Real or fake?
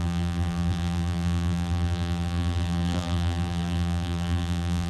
fake